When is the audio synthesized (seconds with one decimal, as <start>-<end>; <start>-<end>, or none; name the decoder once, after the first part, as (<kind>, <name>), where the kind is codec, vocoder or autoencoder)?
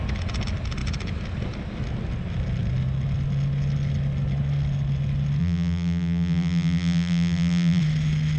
5.4-7.8 (vocoder, BigVGAN v2)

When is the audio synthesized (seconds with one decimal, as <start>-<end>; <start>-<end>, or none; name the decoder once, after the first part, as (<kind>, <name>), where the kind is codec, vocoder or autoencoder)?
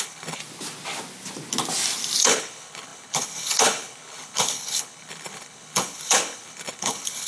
0.0-0.4 (codec, HILCodec); 2.2-7.3